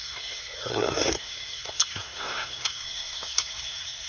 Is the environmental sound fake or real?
fake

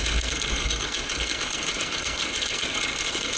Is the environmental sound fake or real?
fake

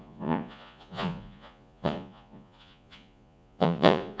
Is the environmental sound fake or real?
fake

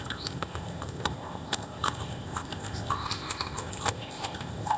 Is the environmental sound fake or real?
fake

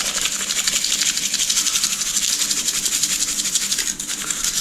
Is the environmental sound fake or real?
real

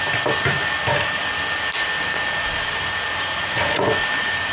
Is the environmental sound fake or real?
real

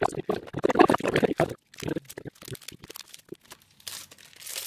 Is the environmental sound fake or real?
real